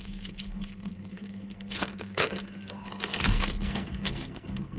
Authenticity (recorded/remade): remade